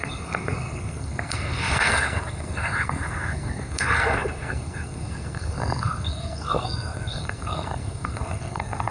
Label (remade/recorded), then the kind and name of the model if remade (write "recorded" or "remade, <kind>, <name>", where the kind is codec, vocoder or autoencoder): remade, codec, SNAC